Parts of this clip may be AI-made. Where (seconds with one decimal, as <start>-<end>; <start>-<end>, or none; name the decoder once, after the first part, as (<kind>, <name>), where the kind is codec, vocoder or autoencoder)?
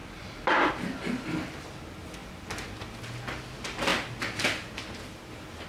none